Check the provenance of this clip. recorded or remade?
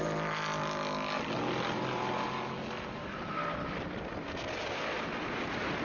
recorded